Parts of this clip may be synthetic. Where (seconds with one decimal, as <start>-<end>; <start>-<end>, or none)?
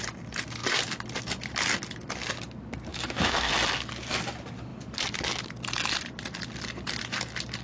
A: 2.9-3.5